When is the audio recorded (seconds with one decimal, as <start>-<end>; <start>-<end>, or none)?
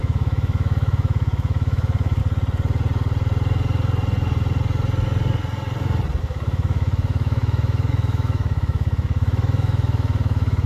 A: 2.2-6.2